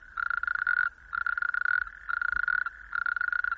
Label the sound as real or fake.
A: real